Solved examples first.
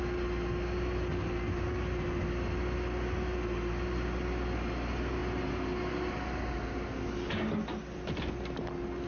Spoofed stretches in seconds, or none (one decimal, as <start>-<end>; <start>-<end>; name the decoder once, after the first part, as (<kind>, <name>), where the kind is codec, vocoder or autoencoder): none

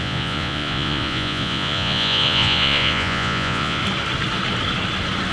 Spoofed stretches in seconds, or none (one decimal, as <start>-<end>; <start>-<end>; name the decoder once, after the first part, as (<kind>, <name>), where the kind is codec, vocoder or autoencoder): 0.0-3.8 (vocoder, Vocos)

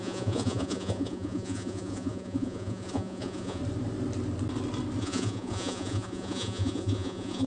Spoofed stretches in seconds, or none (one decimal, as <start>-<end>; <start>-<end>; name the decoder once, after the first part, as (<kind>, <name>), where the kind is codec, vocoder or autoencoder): 0.0-3.6 (vocoder, Vocos); 5.0-7.5